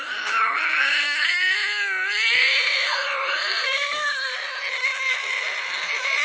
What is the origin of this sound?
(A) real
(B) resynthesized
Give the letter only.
A